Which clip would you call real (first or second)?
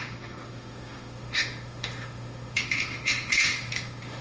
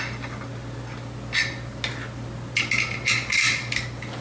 second